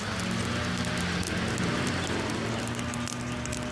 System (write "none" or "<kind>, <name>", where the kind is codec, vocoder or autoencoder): none